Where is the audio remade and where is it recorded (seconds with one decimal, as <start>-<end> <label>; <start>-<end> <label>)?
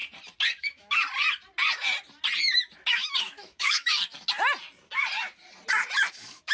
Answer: 0.0-0.6 recorded; 0.6-1.0 remade; 1.0-2.9 recorded; 2.9-4.0 remade; 4.0-6.1 recorded; 6.1-6.5 remade